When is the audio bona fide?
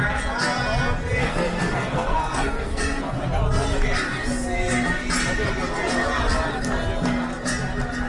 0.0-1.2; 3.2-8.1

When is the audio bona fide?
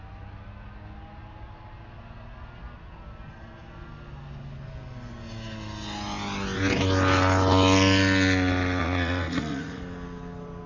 0.0-8.8; 9.8-10.7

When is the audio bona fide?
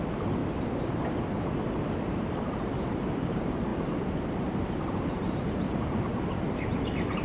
0.4-1.7